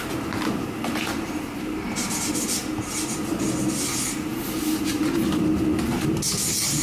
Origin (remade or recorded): recorded